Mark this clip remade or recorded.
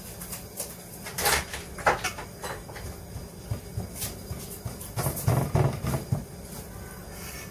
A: recorded